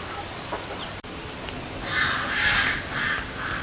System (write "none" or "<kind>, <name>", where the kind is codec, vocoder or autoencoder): none